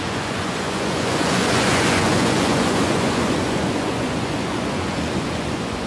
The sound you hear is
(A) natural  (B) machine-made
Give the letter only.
B